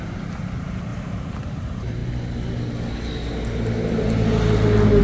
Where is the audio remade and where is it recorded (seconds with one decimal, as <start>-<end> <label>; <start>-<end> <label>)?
0.0-0.9 remade; 0.9-1.4 recorded; 1.4-2.0 remade; 2.0-5.0 recorded